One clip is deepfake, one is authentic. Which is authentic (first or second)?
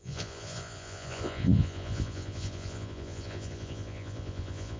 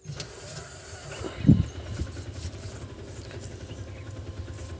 second